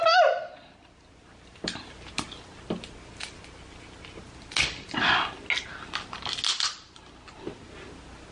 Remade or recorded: recorded